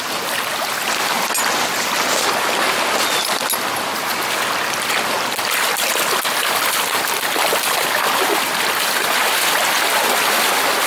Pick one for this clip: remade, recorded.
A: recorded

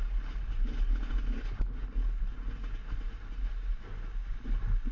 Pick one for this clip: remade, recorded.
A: recorded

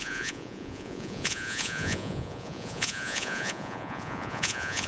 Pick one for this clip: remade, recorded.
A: remade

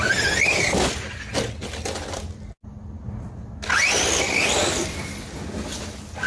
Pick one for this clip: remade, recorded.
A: recorded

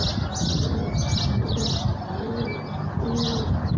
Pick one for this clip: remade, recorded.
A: recorded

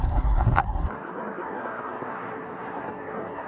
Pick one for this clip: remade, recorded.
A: remade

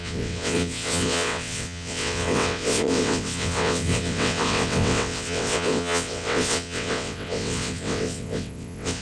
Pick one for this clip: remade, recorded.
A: remade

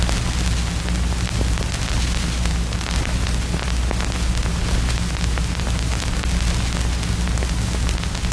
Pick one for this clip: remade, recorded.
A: recorded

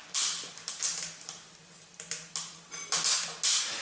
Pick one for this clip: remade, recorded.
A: recorded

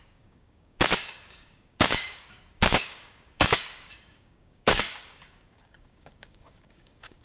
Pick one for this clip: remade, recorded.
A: remade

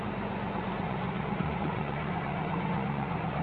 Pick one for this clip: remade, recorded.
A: remade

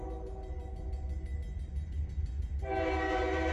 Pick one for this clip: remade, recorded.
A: recorded